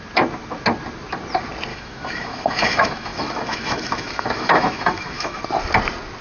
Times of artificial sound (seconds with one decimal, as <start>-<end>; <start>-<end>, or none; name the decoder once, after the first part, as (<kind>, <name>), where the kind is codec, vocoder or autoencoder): 1.7-5.4 (autoencoder, DAC-VAE)